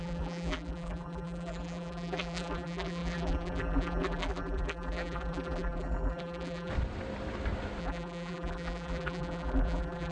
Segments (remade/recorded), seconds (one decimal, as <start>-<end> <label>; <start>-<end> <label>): 0.0-6.7 remade; 6.7-7.8 recorded; 7.8-10.1 remade